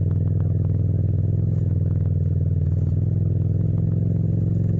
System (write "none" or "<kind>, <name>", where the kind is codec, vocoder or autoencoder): none